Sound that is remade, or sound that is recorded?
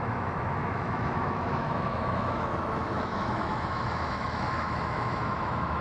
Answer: remade